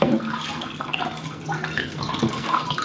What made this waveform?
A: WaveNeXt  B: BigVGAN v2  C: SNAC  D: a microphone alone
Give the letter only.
C